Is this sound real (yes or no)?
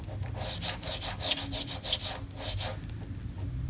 yes